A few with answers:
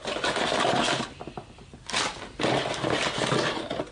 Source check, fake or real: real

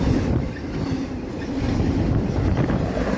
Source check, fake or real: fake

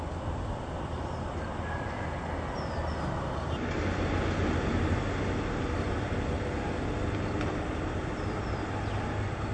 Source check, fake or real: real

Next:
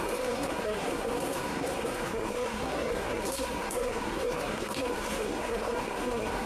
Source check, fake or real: fake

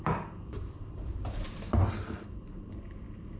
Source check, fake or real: fake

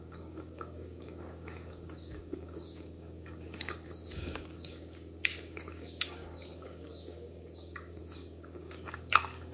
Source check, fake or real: fake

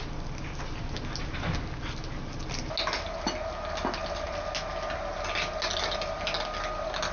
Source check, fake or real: real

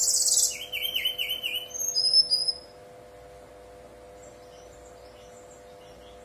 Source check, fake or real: real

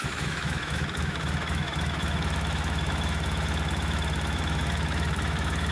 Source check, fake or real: fake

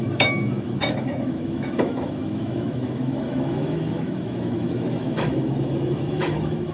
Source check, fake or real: fake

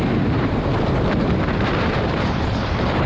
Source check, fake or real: fake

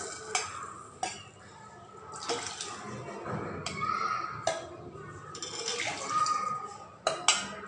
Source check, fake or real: real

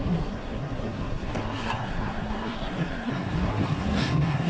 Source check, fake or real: fake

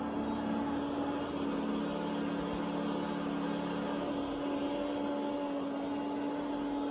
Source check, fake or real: real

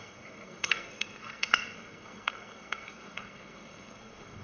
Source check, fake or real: fake